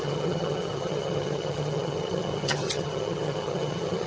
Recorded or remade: remade